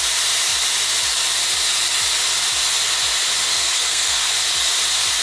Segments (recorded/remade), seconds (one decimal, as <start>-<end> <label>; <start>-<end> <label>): 0.0-3.5 recorded; 3.5-4.3 remade; 4.3-5.2 recorded